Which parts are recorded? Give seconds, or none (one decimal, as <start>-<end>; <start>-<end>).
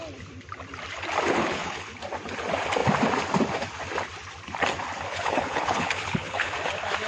0.0-1.4; 2.0-5.1; 6.5-7.1